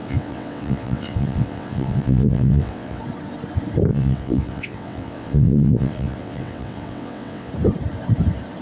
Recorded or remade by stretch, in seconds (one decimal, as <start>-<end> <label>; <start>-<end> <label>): 0.0-3.0 remade; 3.0-3.9 recorded; 3.9-7.5 remade; 7.5-8.6 recorded